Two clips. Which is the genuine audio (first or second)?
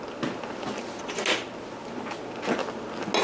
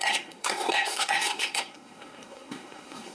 first